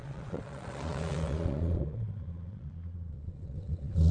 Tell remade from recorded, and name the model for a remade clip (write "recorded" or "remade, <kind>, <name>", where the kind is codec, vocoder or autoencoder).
remade, vocoder, Vocos